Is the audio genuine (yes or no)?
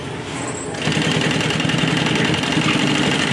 yes